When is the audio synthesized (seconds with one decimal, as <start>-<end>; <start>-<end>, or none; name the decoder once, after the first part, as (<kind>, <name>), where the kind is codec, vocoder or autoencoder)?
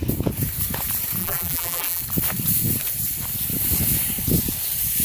1.2-2.0 (vocoder, BigVGAN v2)